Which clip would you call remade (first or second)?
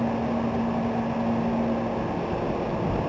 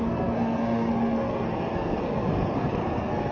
second